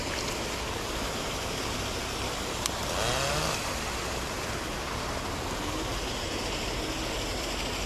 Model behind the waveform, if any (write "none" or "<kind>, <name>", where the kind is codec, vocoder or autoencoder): none